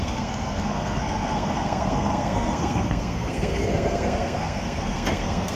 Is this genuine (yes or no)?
no